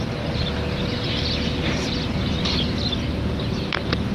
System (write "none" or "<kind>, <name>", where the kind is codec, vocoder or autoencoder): vocoder, BigVGAN v2